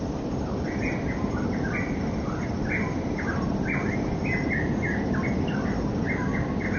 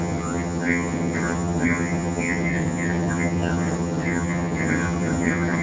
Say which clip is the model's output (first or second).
second